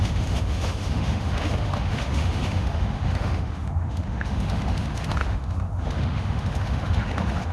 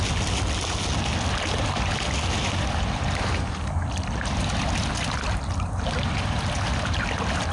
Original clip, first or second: second